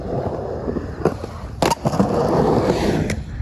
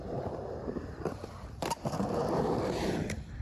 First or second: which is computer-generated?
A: second